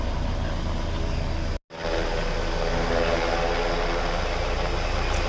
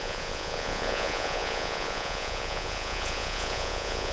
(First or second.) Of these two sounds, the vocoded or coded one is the second